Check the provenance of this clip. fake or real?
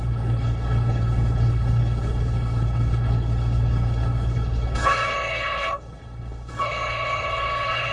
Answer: fake